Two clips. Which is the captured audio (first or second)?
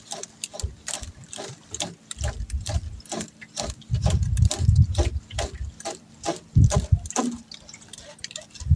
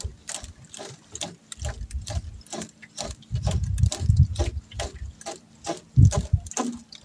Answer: second